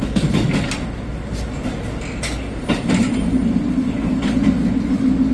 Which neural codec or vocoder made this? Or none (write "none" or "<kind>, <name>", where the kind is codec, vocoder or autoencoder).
none